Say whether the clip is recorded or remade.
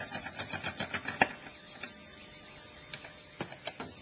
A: recorded